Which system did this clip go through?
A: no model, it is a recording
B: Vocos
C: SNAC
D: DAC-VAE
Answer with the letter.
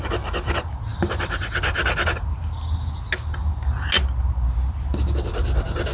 A